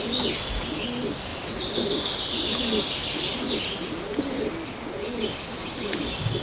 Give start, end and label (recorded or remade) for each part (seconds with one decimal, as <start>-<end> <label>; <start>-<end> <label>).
0.0-1.3 recorded; 1.3-4.5 remade; 4.5-6.4 recorded